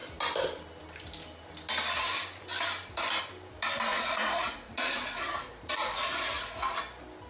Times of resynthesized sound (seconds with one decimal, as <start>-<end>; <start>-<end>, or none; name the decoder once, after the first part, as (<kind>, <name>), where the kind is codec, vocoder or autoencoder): 3.9-6.8 (vocoder, Vocos)